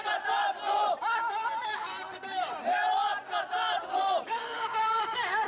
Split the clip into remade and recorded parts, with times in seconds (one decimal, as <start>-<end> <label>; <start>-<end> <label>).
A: 0.0-0.9 recorded; 0.9-3.1 remade; 3.1-4.2 recorded; 4.2-5.5 remade